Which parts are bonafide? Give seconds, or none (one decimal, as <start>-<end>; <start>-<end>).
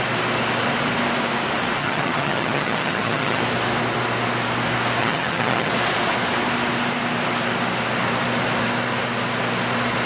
0.0-1.8; 3.4-5.0; 5.7-10.1